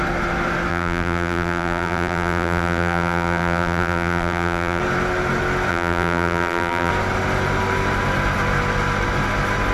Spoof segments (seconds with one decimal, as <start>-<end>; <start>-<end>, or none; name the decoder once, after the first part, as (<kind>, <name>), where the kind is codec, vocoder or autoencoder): 0.7-4.8 (vocoder, BigVGAN v2); 5.7-6.9